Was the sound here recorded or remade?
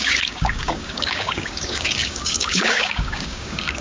remade